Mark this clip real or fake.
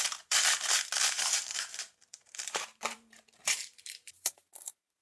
fake